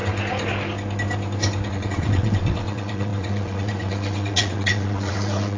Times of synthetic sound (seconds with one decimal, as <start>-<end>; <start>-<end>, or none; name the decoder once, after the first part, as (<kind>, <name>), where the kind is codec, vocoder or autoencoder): 1.7-5.6 (vocoder, WaveNeXt)